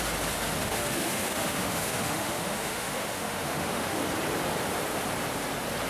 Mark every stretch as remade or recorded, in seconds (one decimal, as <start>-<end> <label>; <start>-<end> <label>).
0.0-0.6 recorded; 0.6-4.0 remade; 4.0-5.9 recorded